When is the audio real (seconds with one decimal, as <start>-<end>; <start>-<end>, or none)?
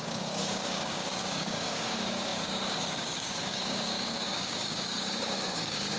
none